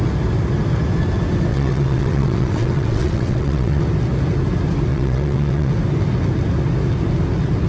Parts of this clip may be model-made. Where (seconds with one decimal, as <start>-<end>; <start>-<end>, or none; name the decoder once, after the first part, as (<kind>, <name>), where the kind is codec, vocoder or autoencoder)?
1.5-3.8 (vocoder, WaveNeXt); 4.9-5.7